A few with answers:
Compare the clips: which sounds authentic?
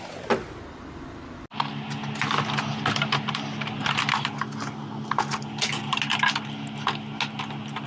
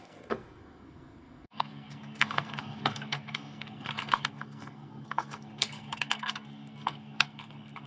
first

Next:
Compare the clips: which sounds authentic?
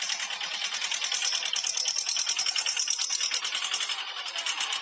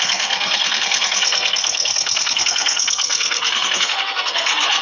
first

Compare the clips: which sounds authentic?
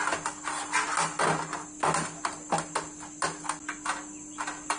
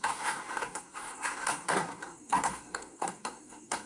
first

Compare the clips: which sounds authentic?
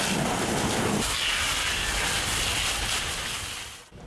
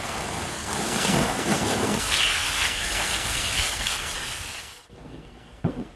first